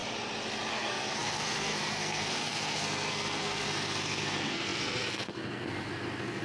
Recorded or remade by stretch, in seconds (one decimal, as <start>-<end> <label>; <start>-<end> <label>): 0.0-0.7 recorded; 0.7-6.4 remade